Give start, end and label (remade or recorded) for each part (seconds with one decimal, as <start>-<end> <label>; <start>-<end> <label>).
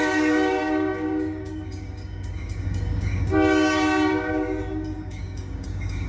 0.0-6.1 remade